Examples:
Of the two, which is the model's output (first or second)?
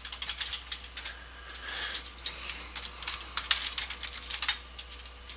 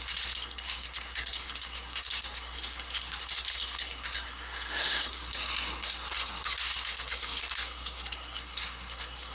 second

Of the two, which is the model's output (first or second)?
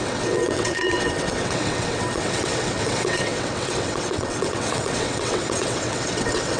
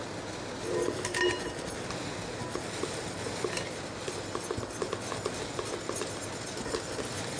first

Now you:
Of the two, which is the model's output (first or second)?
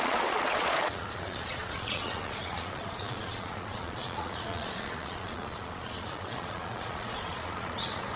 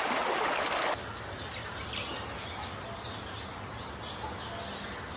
first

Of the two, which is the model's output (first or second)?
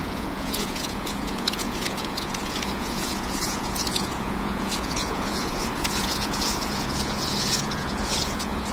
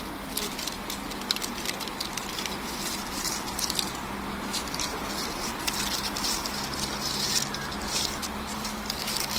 first